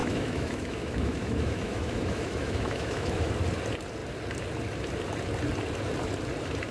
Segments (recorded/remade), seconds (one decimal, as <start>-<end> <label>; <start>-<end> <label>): 0.0-3.3 remade; 3.3-6.7 recorded